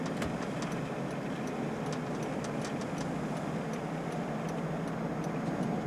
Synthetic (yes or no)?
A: no